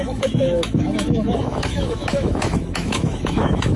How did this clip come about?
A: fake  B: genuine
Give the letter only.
A